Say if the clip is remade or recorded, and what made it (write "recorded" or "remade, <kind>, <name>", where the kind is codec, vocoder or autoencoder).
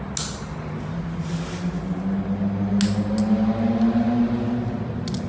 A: recorded